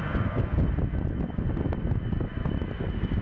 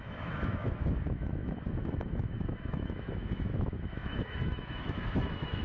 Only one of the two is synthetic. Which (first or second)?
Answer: second